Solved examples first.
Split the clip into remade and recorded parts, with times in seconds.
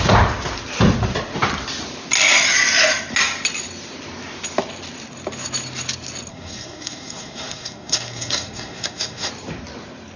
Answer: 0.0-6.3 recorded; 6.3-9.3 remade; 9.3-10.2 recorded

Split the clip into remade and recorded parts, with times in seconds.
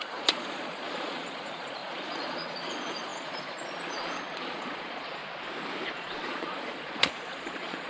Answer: 0.0-5.2 remade; 5.2-5.9 recorded; 5.9-7.9 remade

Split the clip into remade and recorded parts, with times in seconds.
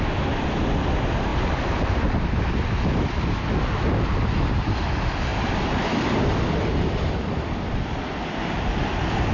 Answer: 0.0-1.3 recorded; 1.3-2.3 remade; 2.3-5.3 recorded; 5.3-7.8 remade; 7.8-9.3 recorded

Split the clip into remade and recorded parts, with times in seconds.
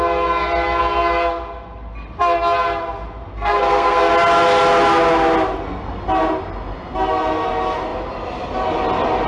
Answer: 0.0-3.3 recorded; 3.3-4.1 remade; 4.1-9.3 recorded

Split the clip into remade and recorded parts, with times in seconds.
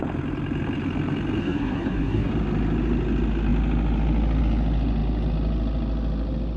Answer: 0.0-1.4 recorded; 1.4-2.3 remade; 2.3-6.6 recorded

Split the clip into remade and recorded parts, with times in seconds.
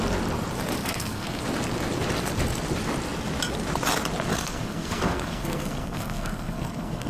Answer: 0.0-0.8 recorded; 0.8-1.4 remade; 1.4-4.3 recorded; 4.3-7.1 remade